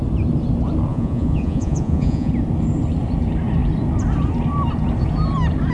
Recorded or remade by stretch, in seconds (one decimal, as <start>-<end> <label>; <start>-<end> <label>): 0.0-0.9 recorded; 0.9-2.3 remade; 2.3-5.7 recorded